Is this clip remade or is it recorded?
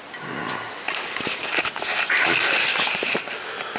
recorded